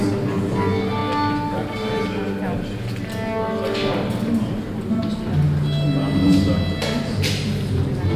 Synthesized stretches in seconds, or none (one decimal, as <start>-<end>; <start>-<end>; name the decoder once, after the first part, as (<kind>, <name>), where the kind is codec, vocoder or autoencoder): none